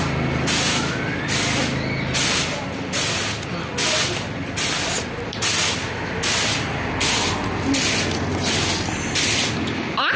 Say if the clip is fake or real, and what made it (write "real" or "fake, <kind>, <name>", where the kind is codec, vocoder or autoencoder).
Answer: real